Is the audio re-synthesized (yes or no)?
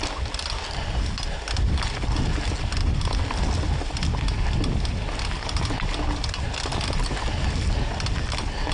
no